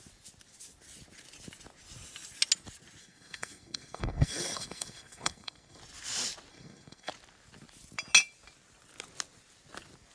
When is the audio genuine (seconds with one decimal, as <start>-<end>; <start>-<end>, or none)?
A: 0.0-3.0; 5.8-6.5; 7.1-10.1

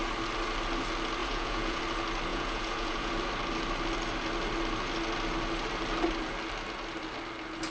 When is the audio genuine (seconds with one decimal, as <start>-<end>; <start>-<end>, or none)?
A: 0.0-1.2; 1.8-2.3; 3.1-7.7

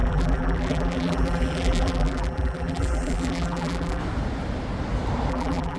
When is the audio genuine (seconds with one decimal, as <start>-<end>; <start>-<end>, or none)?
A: 4.0-5.3

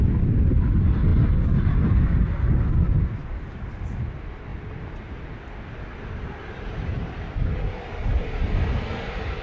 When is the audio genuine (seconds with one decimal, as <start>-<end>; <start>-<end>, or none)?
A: 0.0-1.1; 1.9-3.2; 3.9-9.4

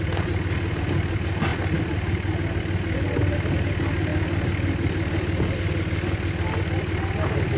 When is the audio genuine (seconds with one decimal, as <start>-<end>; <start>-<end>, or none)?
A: 0.0-7.6